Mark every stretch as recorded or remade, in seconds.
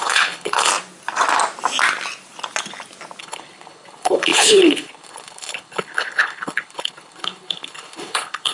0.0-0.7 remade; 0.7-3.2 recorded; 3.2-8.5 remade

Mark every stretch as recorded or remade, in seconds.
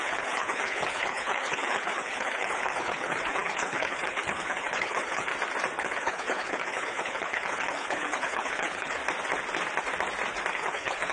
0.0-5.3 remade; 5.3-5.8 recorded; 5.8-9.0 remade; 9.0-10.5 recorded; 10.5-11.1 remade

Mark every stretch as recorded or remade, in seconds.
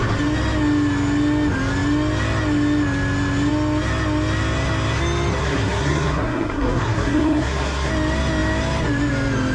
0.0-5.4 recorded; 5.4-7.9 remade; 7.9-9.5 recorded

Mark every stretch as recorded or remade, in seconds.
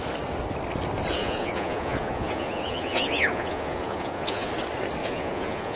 0.0-1.2 recorded; 1.2-4.5 remade; 4.5-5.0 recorded; 5.0-5.8 remade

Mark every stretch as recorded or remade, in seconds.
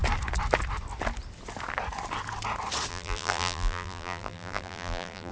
0.0-2.9 recorded; 2.9-5.3 remade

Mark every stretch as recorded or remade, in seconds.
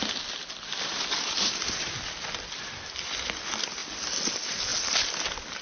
0.0-5.6 recorded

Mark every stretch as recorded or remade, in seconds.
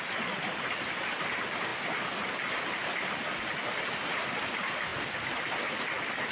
0.0-6.3 recorded